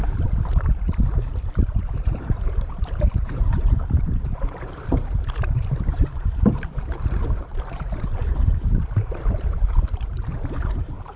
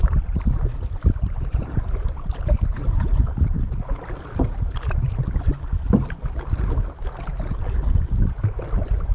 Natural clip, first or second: second